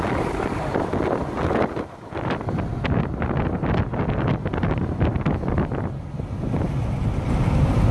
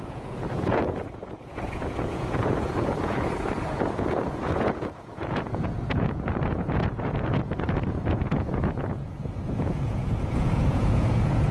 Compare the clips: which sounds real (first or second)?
first